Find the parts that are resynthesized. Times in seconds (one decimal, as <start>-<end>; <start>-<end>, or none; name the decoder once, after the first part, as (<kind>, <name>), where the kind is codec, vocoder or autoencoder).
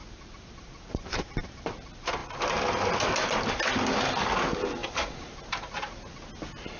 0.0-1.6 (vocoder, BigVGAN v2); 4.8-6.0